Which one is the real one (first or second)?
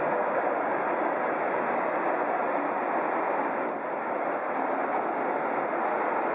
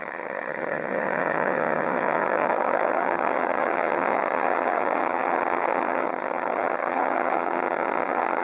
first